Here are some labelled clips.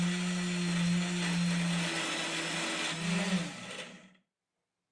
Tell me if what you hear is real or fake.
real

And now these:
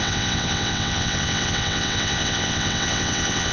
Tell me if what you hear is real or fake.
fake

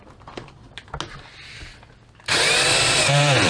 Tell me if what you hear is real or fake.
real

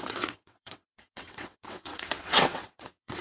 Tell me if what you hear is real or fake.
fake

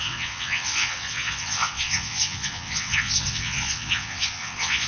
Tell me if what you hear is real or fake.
fake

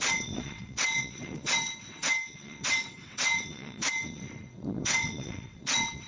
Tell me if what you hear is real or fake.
fake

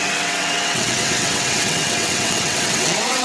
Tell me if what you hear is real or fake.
fake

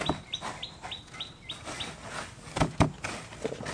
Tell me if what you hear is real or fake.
real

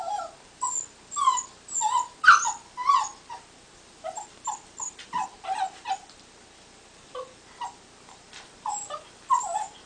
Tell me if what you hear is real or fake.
real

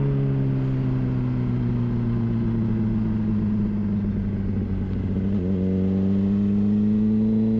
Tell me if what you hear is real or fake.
real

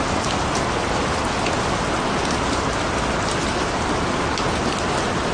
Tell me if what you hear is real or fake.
real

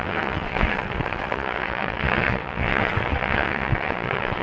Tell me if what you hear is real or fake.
fake